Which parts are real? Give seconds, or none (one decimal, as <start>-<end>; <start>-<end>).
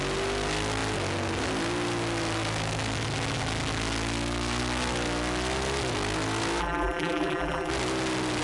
0.0-6.6; 7.7-8.4